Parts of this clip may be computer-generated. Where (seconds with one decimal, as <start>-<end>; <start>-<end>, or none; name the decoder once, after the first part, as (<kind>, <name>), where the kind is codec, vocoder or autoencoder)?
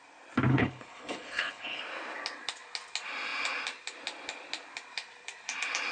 0.5-1.8 (codec, HILCodec)